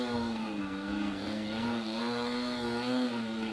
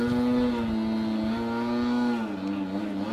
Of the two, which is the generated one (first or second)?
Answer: first